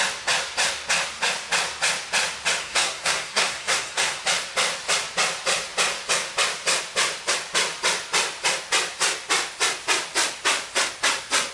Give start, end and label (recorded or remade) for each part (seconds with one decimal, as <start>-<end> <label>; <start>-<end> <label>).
0.0-2.6 recorded; 2.6-4.2 remade; 4.2-11.5 recorded